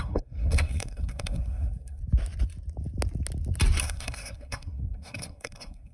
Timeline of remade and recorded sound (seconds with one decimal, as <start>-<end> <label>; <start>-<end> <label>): 0.0-2.0 remade; 2.0-3.8 recorded; 3.8-5.9 remade